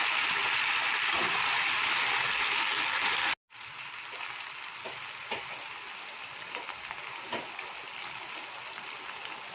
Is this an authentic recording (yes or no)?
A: yes